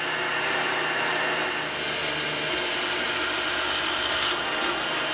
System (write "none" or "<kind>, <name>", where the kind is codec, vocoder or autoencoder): none